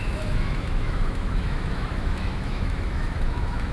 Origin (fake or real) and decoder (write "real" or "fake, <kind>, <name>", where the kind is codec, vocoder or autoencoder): fake, autoencoder, DAC-VAE